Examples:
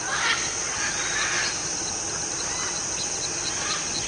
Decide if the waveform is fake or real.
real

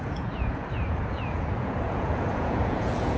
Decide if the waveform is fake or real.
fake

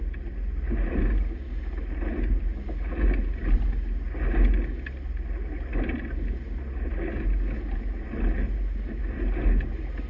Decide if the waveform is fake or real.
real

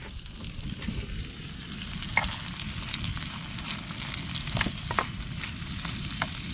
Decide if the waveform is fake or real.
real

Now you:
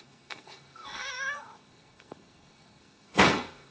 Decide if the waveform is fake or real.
fake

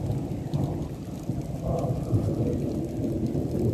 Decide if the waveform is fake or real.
real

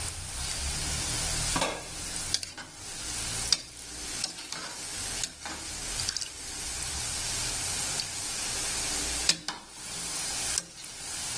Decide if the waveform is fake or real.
real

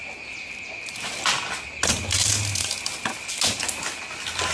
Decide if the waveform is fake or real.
real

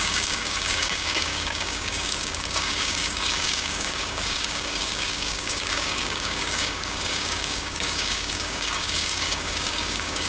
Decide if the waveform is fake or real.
fake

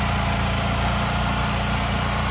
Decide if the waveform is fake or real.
real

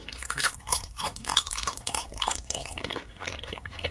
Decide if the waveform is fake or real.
fake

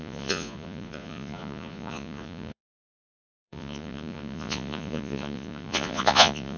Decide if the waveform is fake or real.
fake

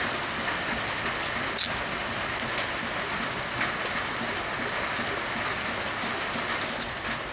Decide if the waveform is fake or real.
real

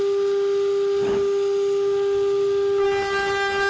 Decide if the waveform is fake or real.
real